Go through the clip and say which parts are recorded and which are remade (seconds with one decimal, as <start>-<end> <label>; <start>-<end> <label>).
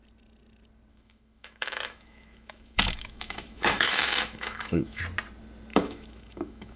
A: 0.0-0.9 recorded; 0.9-5.0 remade; 5.0-5.7 recorded; 5.7-6.8 remade